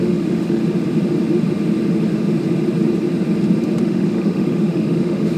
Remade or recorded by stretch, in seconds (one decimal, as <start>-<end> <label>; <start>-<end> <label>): 0.0-0.6 remade; 0.6-3.8 recorded; 3.8-5.4 remade